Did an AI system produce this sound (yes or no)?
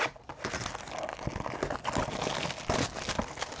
no